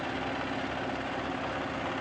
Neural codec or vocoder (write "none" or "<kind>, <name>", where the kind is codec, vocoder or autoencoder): none